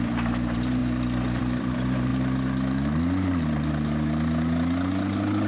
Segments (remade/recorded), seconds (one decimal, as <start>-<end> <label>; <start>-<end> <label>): 0.0-0.8 remade; 0.8-1.4 recorded; 1.4-2.1 remade; 2.1-5.5 recorded

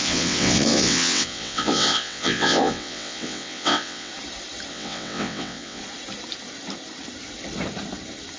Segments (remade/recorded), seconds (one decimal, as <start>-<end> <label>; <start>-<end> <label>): 0.0-4.1 remade; 4.1-4.7 recorded; 4.7-5.8 remade; 5.8-8.4 recorded